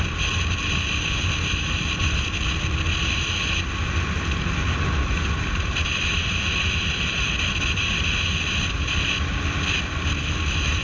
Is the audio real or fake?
real